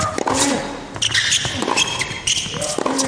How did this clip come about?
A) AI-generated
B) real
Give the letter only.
B